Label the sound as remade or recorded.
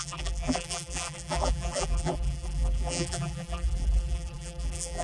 remade